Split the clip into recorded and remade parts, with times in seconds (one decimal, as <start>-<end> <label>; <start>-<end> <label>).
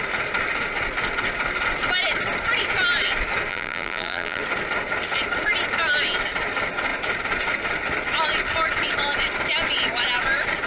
0.0-3.5 recorded; 3.5-4.4 remade; 4.4-10.7 recorded